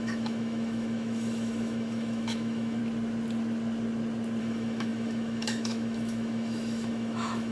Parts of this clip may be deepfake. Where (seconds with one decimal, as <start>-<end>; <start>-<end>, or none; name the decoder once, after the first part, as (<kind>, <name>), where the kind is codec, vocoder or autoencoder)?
0.0-2.8 (autoencoder, DAC-VAE); 4.4-7.5